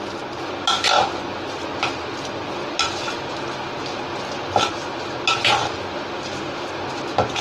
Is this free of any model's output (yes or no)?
yes